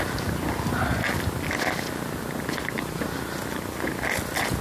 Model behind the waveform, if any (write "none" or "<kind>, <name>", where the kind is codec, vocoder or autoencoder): none